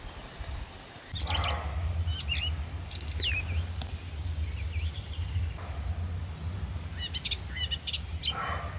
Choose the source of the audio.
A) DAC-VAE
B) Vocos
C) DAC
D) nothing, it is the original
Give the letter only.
D